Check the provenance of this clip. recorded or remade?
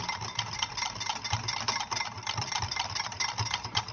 recorded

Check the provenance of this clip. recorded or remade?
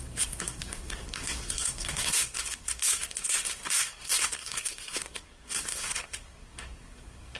remade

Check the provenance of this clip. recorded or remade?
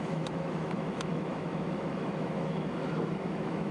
remade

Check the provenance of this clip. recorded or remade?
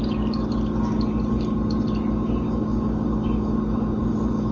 recorded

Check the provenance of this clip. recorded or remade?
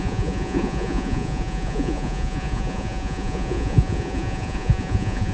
remade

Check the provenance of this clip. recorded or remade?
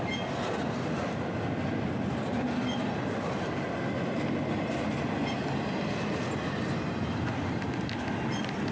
recorded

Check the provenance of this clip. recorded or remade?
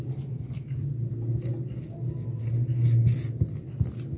recorded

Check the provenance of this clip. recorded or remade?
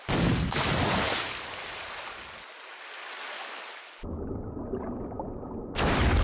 recorded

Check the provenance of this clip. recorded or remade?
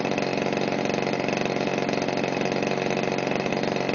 recorded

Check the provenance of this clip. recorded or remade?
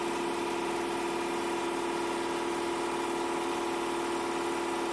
recorded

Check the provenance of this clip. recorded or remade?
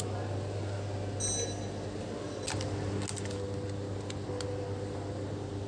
recorded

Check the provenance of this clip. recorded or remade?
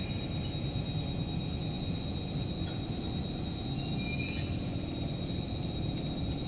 recorded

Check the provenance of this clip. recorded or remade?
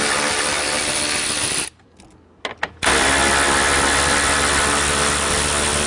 recorded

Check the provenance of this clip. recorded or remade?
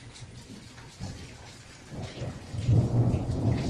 remade